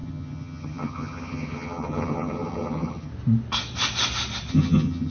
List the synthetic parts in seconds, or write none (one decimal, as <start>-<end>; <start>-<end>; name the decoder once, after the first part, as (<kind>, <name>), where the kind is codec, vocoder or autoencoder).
0.0-3.1 (vocoder, HiFi-GAN); 4.5-5.1